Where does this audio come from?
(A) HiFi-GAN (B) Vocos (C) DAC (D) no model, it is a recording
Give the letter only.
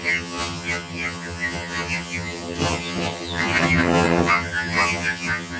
A